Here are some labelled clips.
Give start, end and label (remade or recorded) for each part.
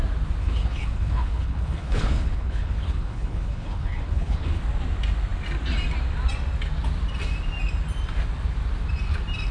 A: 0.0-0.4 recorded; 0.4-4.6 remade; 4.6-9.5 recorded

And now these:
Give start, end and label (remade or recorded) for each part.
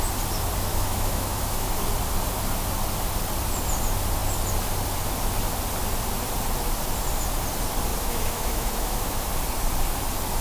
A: 0.0-0.7 recorded; 0.7-1.7 remade; 1.7-7.9 recorded; 7.9-9.3 remade; 9.3-10.4 recorded